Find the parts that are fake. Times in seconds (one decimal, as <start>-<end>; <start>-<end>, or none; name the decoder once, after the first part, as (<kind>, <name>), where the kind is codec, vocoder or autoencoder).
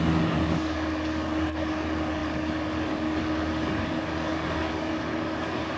0.0-5.8 (codec, DAC)